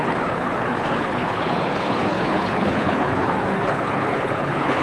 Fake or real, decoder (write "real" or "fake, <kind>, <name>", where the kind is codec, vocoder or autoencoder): fake, codec, HILCodec